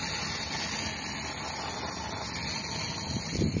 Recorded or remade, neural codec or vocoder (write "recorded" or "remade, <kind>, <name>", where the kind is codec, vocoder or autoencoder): recorded